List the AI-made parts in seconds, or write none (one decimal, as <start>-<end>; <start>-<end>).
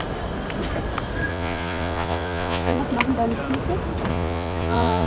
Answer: 1.3-2.8; 4.1-5.1